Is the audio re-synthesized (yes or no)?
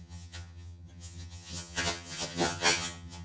yes